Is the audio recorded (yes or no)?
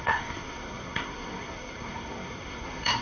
no